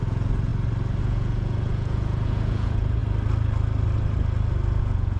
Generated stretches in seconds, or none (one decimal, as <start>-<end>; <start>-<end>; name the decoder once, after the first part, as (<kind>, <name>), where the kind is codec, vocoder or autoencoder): 0.0-0.5 (vocoder, Vocos); 1.0-3.0; 4.8-5.2